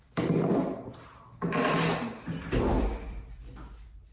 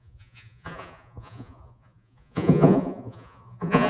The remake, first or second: second